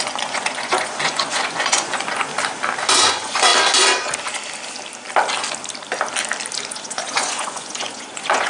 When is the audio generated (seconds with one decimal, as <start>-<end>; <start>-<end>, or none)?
0.0-2.3; 2.9-3.5; 6.7-8.5